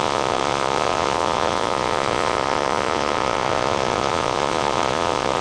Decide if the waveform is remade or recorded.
remade